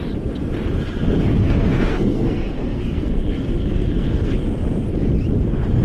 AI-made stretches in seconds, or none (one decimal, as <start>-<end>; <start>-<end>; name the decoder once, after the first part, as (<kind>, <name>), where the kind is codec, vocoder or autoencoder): 1.4-4.3 (codec, SNAC)